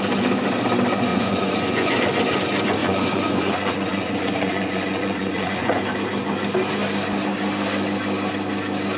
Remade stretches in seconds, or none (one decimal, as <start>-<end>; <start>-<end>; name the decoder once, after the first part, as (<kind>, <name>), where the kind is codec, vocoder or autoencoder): 1.1-2.0 (vocoder, Vocos); 2.8-5.8